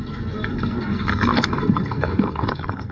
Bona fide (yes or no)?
no